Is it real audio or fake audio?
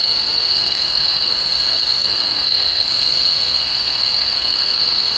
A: fake